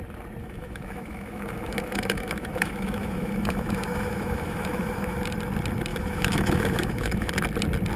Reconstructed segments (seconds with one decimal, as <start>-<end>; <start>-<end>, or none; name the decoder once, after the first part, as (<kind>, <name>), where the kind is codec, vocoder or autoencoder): 0.4-5.2 (autoencoder, DAC-VAE); 5.9-7.3